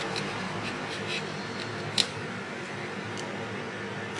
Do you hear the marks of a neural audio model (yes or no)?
no